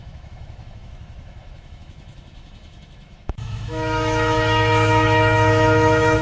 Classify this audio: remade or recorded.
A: remade